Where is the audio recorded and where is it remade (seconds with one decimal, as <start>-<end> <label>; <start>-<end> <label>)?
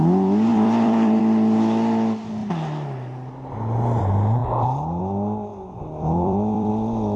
0.0-0.5 recorded; 0.5-1.2 remade; 1.2-5.5 recorded; 5.5-6.7 remade; 6.7-7.2 recorded